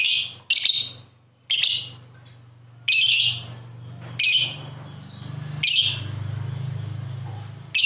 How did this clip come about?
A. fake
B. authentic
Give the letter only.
B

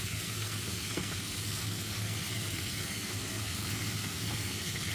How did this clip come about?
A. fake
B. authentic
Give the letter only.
A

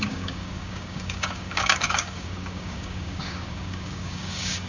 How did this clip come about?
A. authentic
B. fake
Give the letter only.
B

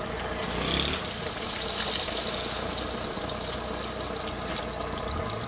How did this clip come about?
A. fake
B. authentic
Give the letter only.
B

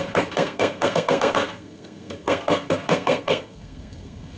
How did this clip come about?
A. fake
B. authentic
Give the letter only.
A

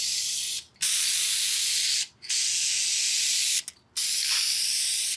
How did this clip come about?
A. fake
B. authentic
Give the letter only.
B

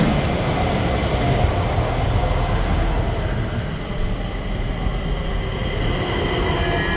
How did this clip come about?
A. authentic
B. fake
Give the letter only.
A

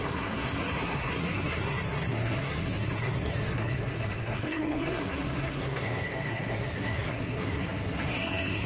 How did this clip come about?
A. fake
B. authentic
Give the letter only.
A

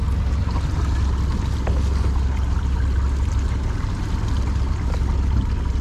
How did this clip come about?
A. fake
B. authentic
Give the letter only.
B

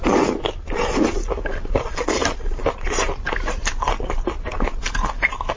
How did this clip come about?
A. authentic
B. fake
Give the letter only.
A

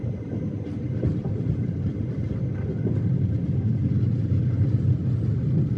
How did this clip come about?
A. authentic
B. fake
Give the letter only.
A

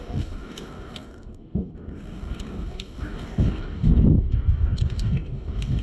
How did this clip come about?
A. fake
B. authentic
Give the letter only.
A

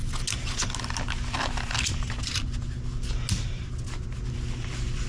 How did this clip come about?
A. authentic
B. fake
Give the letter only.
A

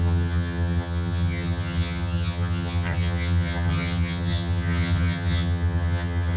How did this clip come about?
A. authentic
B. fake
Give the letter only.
B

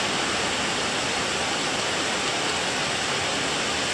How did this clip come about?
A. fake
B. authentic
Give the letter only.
B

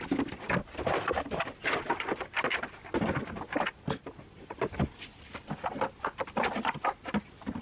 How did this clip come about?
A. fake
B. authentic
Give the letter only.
B